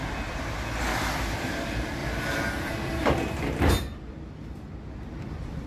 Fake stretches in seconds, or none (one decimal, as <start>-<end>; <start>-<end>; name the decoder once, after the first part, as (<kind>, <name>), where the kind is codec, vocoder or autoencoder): 0.9-1.5 (vocoder, BigVGAN v2); 2.0-3.7